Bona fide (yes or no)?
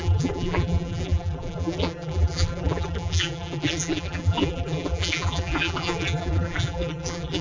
no